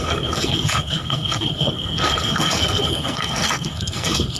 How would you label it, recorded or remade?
remade